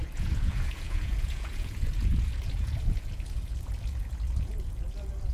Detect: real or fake fake